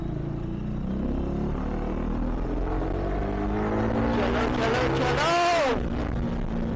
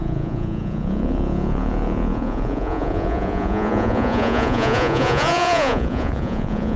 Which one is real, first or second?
first